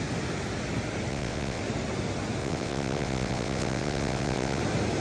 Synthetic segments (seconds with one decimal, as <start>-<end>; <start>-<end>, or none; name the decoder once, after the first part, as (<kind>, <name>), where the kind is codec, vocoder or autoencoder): 1.1-1.6 (vocoder, WaveNeXt); 2.4-4.6